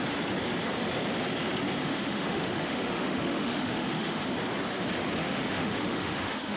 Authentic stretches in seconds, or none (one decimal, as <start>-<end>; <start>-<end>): 0.0-1.8; 4.2-5.2

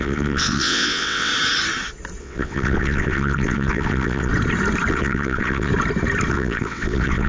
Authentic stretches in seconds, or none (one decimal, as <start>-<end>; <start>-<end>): 1.3-2.2; 4.3-4.9; 5.7-6.3

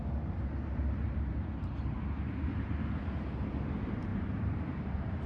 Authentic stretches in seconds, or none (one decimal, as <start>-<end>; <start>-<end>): none

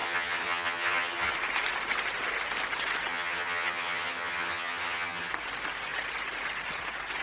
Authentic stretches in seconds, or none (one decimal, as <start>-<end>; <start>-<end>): 1.3-3.1; 5.3-7.2

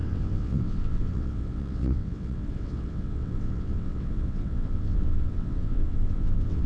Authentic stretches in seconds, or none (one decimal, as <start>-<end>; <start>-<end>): none

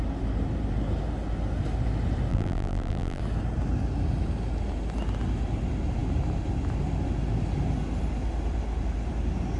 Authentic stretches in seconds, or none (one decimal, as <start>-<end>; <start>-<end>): 0.0-2.3; 3.2-9.6

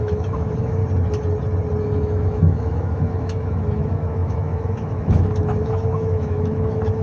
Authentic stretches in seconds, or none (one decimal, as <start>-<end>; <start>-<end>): 0.8-1.8